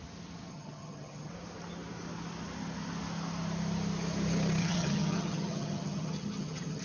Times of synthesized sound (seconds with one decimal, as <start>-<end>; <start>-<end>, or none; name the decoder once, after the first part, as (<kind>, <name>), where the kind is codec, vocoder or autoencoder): 0.5-1.3 (vocoder, HiFi-GAN); 4.6-6.8

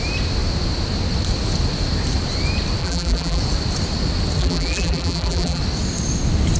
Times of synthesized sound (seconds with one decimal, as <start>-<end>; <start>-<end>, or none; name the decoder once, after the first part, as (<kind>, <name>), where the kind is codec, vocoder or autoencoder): 2.8-3.4 (vocoder, BigVGAN v2); 4.4-5.6

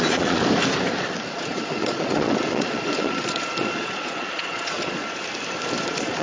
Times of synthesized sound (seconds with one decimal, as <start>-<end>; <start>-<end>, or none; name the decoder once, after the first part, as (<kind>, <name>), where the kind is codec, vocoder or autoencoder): 0.0-0.4 (vocoder, Vocos); 1.3-5.2; 5.8-6.2

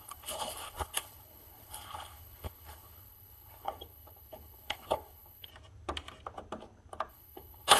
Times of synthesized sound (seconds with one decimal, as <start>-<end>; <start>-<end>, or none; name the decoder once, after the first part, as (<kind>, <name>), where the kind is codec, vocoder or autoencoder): 0.0-5.5 (codec, HILCodec); 7.1-7.8

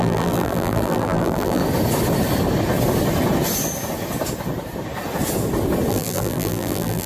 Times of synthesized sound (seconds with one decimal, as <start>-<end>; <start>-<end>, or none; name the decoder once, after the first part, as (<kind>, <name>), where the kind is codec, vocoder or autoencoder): 0.0-1.6 (vocoder, BigVGAN v2); 5.9-7.1

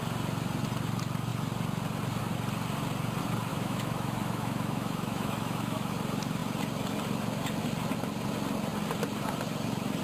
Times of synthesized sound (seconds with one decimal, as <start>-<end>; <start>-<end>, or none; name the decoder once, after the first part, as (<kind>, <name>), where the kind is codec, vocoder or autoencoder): 3.5-5.9 (autoencoder, DAC-VAE)